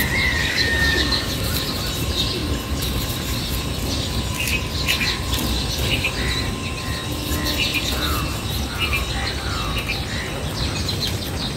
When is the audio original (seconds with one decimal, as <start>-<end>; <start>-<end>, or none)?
0.0-0.4; 1.3-11.6